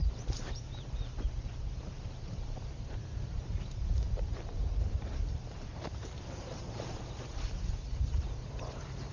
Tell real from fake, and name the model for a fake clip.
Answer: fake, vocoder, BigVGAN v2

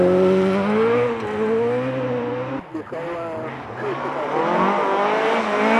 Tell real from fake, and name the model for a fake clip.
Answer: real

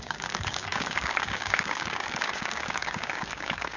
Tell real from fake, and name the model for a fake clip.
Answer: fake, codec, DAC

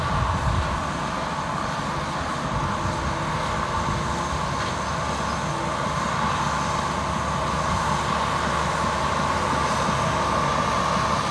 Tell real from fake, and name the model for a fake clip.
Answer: real